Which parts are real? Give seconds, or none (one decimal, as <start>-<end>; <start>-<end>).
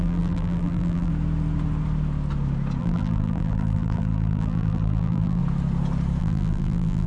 1.1-2.8; 5.4-6.2